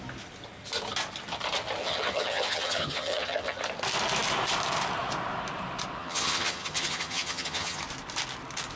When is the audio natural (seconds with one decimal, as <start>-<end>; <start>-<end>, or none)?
0.0-1.8; 3.6-6.0; 7.8-8.8

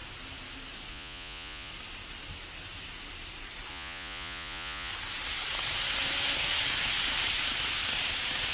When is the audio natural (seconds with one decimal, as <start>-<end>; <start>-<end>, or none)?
0.0-0.9; 1.7-3.7; 4.9-8.5

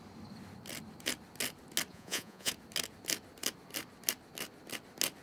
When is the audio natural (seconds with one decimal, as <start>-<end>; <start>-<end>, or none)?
0.0-1.9; 2.5-5.2